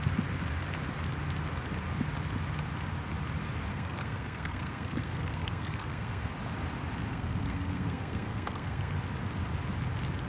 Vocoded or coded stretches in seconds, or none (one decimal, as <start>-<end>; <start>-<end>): 3.7-6.3; 7.1-8.9